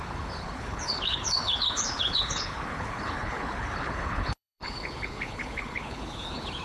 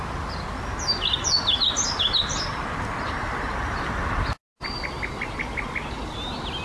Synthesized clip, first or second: first